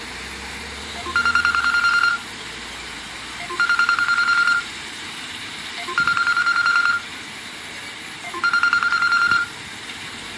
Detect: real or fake fake